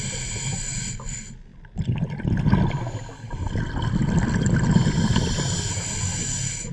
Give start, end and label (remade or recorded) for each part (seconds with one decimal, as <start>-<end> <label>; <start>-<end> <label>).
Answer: 0.0-6.7 recorded